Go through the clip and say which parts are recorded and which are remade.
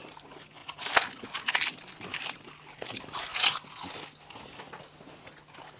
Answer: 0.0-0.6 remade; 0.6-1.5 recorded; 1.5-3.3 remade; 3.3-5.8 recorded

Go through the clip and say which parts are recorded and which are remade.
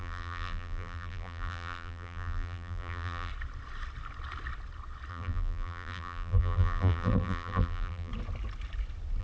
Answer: 0.0-3.3 remade; 3.3-5.1 recorded; 5.1-8.1 remade; 8.1-9.2 recorded